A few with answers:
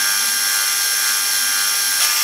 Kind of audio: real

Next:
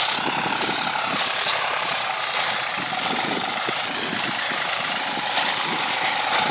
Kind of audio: real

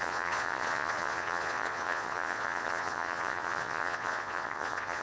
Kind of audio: fake